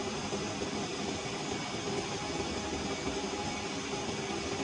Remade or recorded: recorded